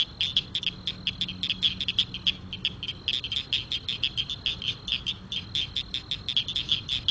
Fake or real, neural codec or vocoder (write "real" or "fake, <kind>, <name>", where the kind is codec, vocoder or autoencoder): real